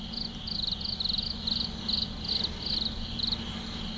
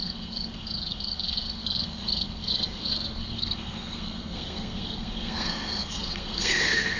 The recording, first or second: first